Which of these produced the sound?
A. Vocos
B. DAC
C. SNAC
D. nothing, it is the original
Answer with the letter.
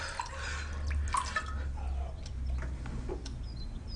D